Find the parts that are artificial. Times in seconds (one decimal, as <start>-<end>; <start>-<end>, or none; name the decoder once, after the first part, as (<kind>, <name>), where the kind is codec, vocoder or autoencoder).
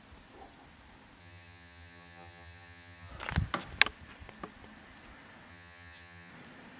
1.2-3.1 (vocoder, HiFi-GAN); 5.5-6.3